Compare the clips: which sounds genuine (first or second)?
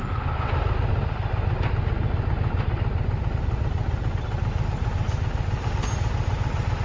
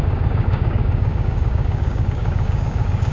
first